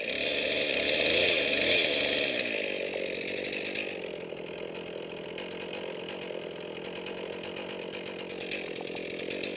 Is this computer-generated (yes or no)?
no